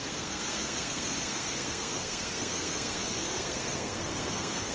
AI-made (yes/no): yes